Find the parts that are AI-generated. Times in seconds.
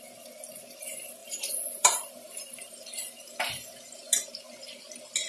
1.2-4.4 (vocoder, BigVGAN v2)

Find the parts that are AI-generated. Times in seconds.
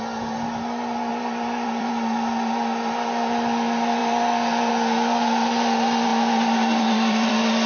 1.1-1.9 (vocoder, BigVGAN v2); 4.0-4.7; 6.1-7.3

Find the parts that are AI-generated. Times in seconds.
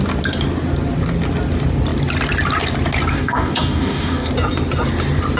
3.1-4.3 (codec, DAC)